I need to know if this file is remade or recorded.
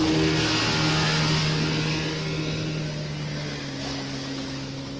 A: recorded